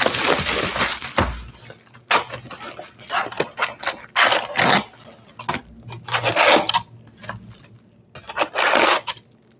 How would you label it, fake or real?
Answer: real